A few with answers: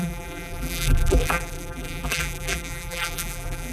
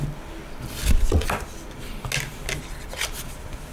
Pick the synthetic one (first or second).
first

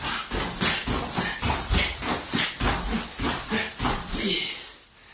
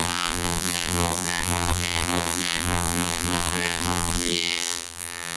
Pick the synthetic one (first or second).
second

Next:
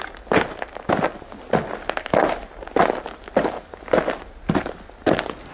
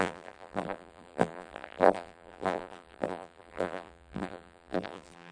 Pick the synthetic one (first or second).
second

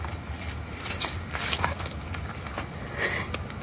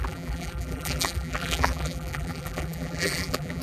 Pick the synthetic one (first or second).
second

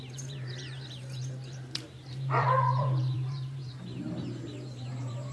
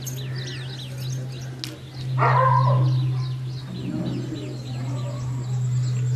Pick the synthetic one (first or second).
first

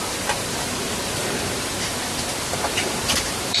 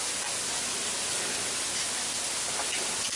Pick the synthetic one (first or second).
first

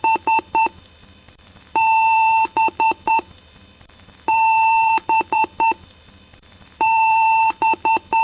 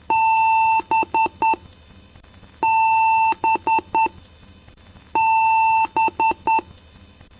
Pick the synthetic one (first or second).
first